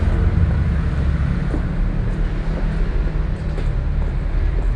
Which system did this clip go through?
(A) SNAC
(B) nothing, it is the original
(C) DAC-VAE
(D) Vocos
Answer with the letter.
B